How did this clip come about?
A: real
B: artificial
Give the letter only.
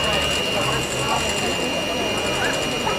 A